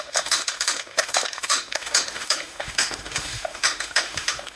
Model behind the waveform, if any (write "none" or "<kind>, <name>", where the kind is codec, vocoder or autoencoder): autoencoder, DAC-VAE